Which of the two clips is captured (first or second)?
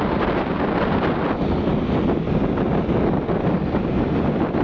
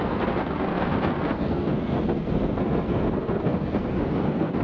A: first